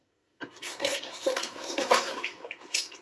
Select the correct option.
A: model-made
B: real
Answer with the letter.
A